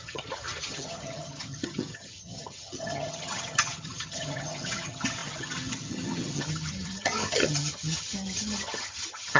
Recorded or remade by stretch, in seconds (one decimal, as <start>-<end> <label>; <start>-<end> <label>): 0.0-9.4 remade